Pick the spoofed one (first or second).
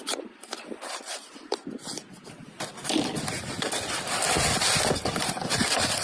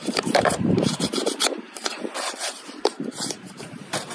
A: second